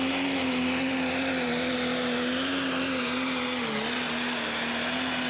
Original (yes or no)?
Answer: yes